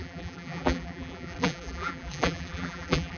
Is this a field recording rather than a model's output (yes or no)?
no